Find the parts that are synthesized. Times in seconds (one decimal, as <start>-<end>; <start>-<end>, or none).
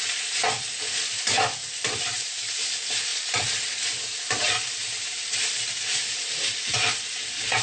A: 1.6-2.7